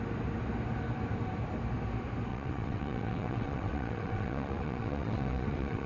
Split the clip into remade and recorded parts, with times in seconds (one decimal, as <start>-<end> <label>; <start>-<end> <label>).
0.0-2.3 recorded; 2.3-5.9 remade

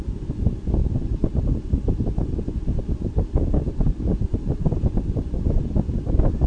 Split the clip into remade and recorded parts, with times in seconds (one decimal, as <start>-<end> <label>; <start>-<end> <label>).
0.0-6.5 recorded

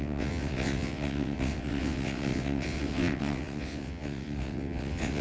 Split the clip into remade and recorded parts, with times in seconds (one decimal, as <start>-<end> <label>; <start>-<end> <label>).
0.0-5.2 remade